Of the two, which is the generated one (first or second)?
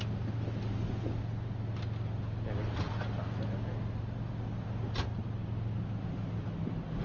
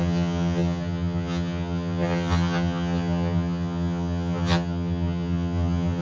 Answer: second